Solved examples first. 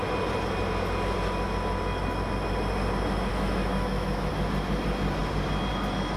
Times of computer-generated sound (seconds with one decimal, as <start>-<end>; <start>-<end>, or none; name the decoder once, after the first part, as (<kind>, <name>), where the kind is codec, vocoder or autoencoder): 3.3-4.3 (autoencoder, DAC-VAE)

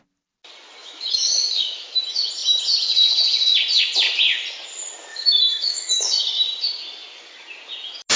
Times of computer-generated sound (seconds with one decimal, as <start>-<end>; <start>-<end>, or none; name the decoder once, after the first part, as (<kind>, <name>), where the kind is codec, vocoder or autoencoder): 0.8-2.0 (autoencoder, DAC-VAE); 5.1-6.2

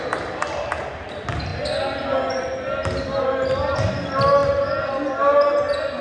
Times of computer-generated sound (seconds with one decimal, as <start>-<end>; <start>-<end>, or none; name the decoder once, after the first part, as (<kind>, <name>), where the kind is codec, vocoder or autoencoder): none